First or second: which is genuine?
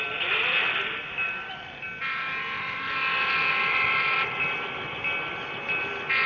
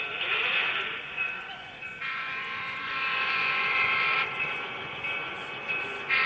first